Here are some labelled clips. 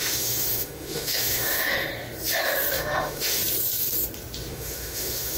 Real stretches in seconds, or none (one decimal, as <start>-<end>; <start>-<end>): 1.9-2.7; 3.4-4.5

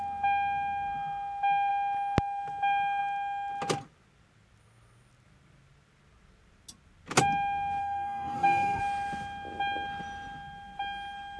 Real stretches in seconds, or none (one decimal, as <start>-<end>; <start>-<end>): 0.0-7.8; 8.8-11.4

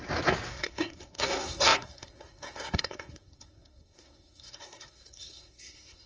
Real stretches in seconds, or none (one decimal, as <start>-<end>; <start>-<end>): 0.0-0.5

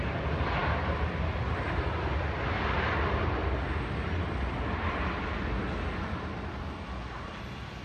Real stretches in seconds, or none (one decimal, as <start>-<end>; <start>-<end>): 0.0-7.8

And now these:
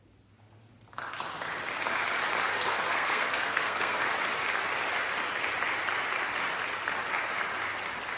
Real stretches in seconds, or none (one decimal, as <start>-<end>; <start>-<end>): 0.0-2.5; 4.0-8.2